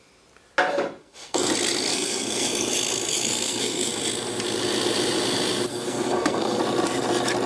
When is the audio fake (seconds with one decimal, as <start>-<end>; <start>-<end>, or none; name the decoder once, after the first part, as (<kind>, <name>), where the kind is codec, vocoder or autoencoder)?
1.0-1.5 (codec, SNAC); 1.9-2.7; 3.1-3.9; 5.7-6.6